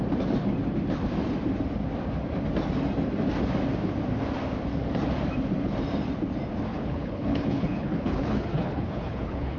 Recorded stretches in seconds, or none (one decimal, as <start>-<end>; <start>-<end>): 0.0-6.7